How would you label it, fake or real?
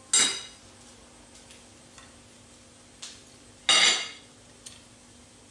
real